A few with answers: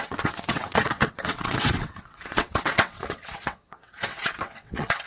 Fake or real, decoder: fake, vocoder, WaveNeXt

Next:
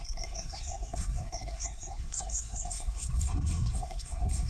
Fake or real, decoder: fake, codec, SNAC